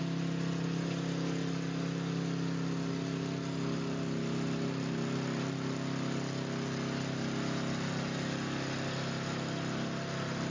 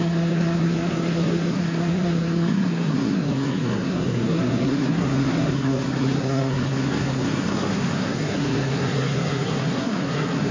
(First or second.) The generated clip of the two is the second